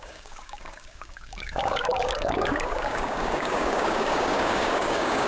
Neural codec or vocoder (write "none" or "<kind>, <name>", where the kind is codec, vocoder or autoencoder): codec, DAC